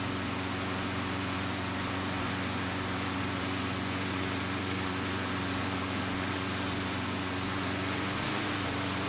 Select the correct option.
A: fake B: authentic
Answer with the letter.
A